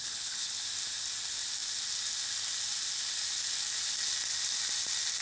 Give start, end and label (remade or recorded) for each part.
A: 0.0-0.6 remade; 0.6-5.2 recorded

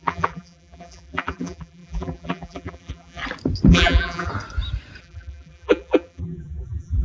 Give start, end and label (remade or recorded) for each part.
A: 0.0-3.2 remade; 3.2-3.7 recorded; 3.7-4.3 remade; 4.3-5.0 recorded; 5.0-7.0 remade

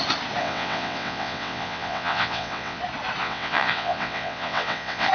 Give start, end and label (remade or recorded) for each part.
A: 0.0-0.4 recorded; 0.4-2.8 remade; 2.8-3.2 recorded; 3.2-5.1 remade

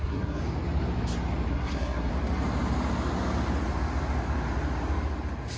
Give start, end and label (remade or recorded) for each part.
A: 0.0-0.4 remade; 0.4-1.5 recorded; 1.5-2.1 remade; 2.1-5.6 recorded

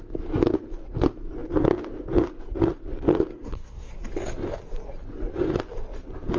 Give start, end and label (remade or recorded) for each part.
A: 0.0-3.3 recorded; 3.3-3.9 remade; 3.9-6.4 recorded

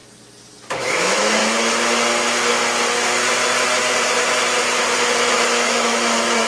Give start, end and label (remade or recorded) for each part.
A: 0.0-0.8 recorded; 0.8-1.4 remade; 1.4-5.3 recorded; 5.3-6.5 remade

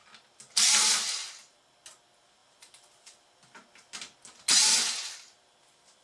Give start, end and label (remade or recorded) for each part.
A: 0.0-6.0 recorded